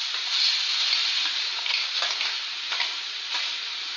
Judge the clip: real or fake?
real